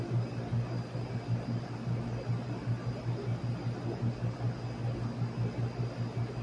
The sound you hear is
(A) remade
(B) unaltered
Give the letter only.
B